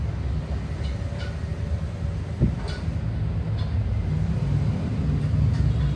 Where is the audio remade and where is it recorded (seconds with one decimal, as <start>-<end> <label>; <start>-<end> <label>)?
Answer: 0.0-6.0 recorded